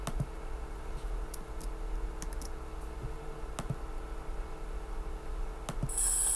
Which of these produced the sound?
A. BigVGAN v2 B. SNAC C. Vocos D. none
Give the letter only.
D